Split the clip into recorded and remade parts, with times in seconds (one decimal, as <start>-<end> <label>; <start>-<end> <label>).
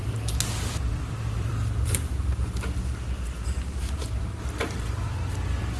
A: 0.0-2.8 remade; 2.8-5.8 recorded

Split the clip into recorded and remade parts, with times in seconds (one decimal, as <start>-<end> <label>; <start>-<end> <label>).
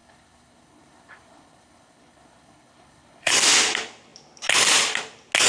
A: 0.0-3.3 remade; 3.3-5.5 recorded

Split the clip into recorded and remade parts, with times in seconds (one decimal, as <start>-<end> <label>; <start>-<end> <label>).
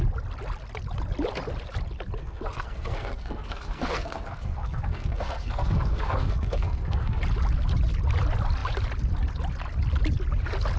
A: 0.0-2.2 recorded; 2.2-7.2 remade; 7.2-10.8 recorded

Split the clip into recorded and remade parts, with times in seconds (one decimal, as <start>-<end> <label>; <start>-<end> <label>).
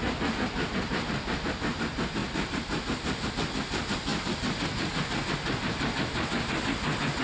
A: 0.0-7.2 recorded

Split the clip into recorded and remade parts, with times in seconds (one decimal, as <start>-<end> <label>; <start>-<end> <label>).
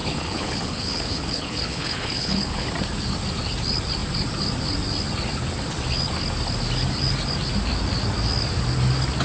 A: 0.0-2.7 remade; 2.7-9.2 recorded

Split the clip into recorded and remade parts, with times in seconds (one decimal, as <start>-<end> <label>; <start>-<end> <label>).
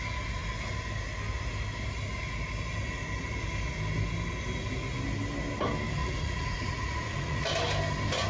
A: 0.0-6.0 recorded; 6.0-7.4 remade; 7.4-8.3 recorded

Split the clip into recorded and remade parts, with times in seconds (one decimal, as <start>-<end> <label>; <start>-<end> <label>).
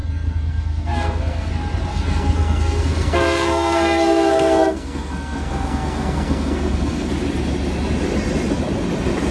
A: 0.0-1.5 remade; 1.5-1.9 recorded; 1.9-7.1 remade; 7.1-9.3 recorded